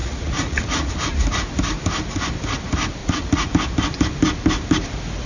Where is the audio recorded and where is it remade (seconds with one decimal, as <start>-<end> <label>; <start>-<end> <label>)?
0.0-0.9 remade; 0.9-3.0 recorded; 3.0-3.5 remade; 3.5-5.3 recorded